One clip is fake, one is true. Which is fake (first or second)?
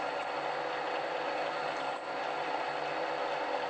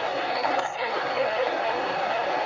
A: second